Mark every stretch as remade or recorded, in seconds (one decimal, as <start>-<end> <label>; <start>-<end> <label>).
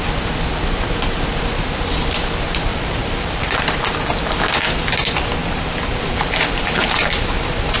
0.0-2.7 recorded; 2.7-3.6 remade; 3.6-5.4 recorded; 5.4-7.3 remade; 7.3-7.8 recorded